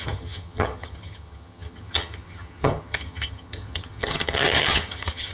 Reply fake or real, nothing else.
fake